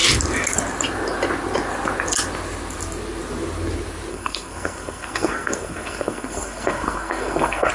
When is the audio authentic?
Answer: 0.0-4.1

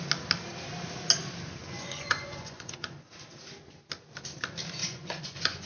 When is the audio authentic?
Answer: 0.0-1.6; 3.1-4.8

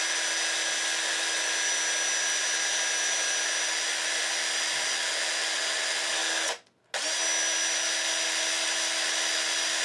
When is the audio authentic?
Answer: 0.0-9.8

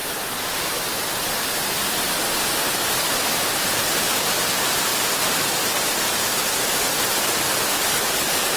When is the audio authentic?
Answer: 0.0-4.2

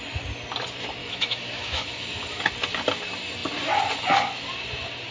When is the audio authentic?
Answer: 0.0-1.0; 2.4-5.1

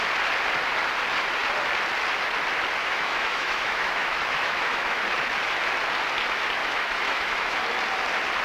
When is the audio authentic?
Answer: 0.0-2.8; 5.0-6.6; 7.6-8.4